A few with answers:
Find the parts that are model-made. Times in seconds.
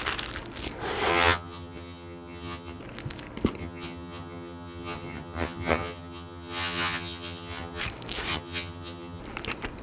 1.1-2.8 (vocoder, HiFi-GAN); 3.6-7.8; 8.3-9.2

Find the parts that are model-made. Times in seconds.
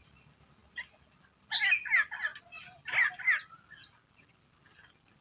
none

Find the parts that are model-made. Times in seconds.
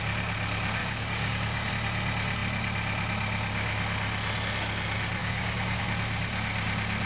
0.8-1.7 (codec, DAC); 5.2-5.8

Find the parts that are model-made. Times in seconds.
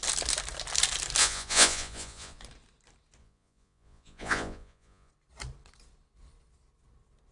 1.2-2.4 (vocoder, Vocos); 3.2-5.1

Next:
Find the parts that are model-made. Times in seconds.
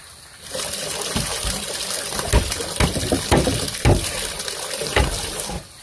none